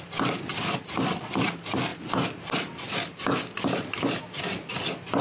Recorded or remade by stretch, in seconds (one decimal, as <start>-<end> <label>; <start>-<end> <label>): 0.0-5.2 recorded